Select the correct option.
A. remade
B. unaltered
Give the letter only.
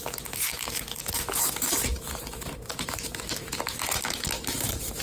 A